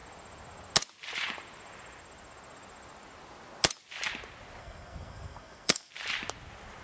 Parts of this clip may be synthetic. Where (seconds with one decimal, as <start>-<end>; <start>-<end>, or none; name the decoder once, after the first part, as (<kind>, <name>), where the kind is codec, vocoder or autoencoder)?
4.6-5.9 (codec, SNAC)